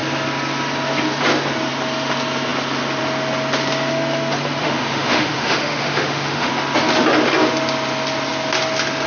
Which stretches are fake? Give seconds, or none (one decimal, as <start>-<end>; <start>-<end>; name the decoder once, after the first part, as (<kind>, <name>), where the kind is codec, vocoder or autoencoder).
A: 4.6-6.5 (autoencoder, DAC-VAE)